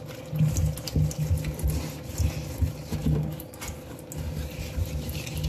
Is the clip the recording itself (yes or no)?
yes